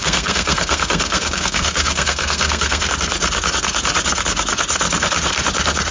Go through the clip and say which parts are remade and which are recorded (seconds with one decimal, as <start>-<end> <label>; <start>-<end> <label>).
0.0-2.9 remade; 2.9-5.9 recorded